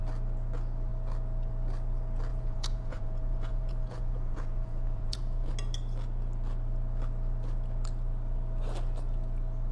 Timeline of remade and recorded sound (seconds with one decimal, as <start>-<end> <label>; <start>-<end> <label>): 0.0-2.3 recorded; 2.3-5.5 remade; 5.5-9.7 recorded